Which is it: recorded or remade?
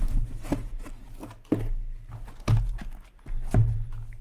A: recorded